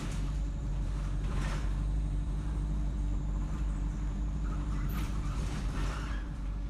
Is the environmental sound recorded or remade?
remade